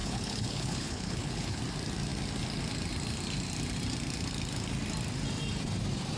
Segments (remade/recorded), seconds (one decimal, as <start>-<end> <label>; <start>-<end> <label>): 0.0-1.6 remade; 1.6-6.2 recorded